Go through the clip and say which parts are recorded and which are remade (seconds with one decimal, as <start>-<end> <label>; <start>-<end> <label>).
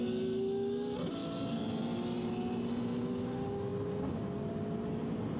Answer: 0.0-5.4 recorded